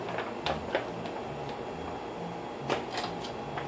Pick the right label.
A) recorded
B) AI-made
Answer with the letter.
A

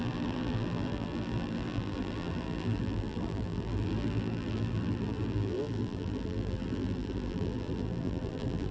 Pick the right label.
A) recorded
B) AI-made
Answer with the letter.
B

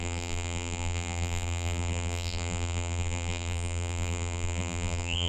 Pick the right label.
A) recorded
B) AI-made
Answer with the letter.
B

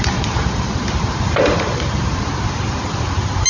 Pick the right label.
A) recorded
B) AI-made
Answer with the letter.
B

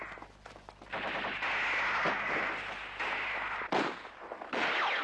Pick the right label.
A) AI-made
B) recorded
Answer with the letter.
B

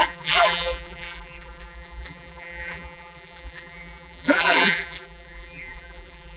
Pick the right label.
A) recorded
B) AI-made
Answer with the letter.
B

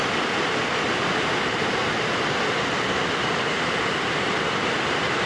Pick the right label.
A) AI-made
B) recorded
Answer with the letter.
A